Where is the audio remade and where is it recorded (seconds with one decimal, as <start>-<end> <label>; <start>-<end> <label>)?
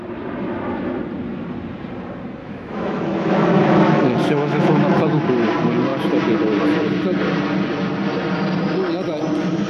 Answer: 0.0-2.4 recorded; 2.4-5.3 remade; 5.3-9.7 recorded